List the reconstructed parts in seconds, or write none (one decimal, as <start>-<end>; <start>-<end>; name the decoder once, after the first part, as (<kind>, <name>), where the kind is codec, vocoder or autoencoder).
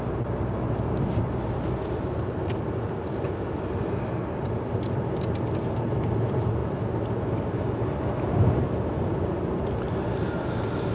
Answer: none